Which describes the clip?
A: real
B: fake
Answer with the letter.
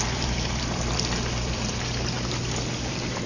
B